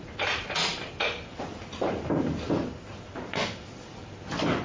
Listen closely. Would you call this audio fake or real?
real